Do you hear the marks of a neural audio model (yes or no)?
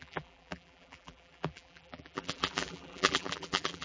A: yes